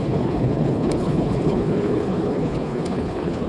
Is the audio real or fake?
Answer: fake